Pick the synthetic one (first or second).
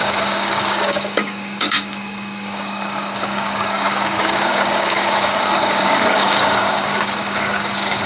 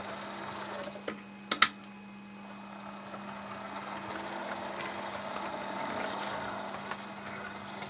first